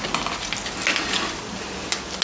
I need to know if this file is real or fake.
real